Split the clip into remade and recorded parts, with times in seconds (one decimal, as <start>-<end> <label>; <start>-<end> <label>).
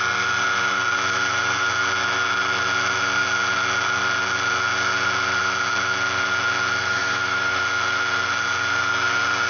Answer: 0.0-7.0 recorded; 7.0-7.6 remade; 7.6-9.5 recorded